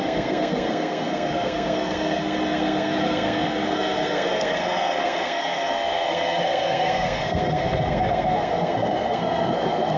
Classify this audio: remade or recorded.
remade